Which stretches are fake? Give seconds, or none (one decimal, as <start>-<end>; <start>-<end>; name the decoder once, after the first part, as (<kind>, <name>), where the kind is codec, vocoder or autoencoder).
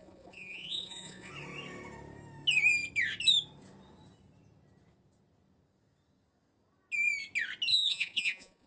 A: 0.0-1.3 (vocoder, Vocos); 7.7-8.7